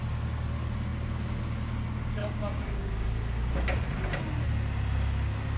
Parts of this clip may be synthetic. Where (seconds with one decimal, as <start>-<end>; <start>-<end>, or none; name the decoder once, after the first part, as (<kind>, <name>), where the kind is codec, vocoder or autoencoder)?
2.2-3.5 (codec, DAC)